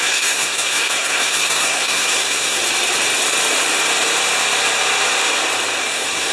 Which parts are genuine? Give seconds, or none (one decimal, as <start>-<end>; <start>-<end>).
2.6-5.8